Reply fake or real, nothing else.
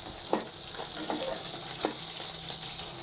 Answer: real